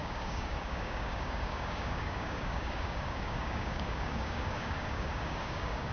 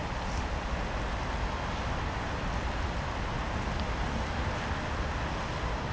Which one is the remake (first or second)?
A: first